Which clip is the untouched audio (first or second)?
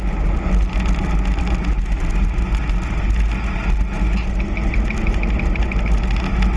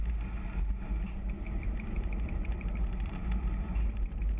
first